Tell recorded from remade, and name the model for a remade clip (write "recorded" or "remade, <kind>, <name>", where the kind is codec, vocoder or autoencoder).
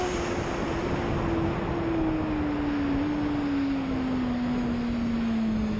recorded